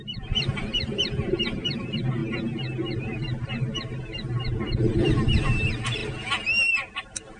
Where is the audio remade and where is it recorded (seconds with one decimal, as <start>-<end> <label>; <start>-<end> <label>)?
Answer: 0.0-2.2 remade; 2.2-3.0 recorded; 3.0-6.0 remade; 6.0-6.9 recorded; 6.9-7.4 remade